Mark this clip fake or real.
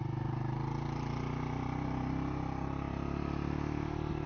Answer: real